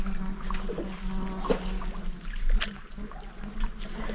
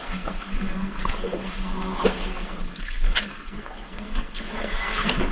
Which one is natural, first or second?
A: first